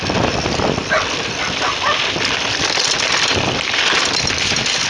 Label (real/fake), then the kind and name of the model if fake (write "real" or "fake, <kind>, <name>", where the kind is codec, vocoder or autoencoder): fake, vocoder, BigVGAN v2